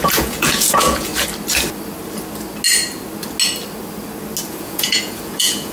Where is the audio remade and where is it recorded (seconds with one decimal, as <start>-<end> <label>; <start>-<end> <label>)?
0.0-1.1 remade; 1.1-4.5 recorded; 4.5-5.7 remade